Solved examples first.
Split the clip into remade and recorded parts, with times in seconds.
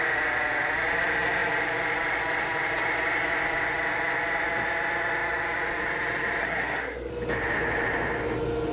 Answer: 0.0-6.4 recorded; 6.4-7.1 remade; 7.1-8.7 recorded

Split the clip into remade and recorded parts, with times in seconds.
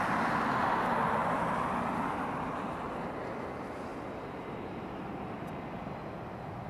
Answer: 0.0-6.7 recorded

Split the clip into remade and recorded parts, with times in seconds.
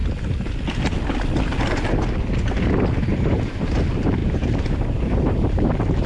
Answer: 0.0-3.0 recorded; 3.0-6.1 remade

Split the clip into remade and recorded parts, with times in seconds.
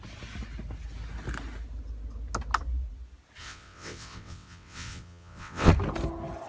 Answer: 0.0-3.4 recorded; 3.4-5.7 remade; 5.7-6.5 recorded